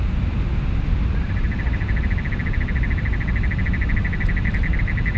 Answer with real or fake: real